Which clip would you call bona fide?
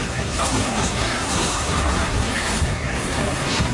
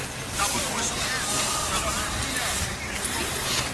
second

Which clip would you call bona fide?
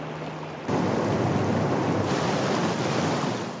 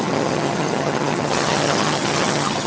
first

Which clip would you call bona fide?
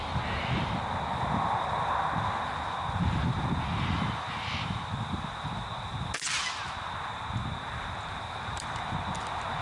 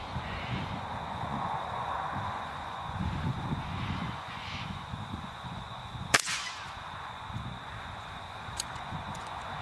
first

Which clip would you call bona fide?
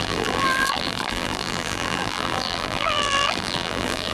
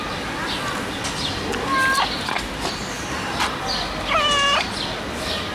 second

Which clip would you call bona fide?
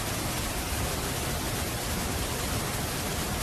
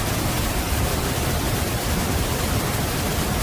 first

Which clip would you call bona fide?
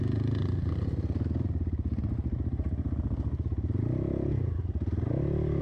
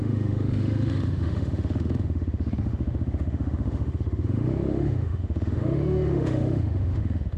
first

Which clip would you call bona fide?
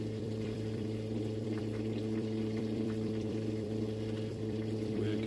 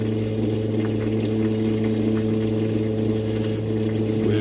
second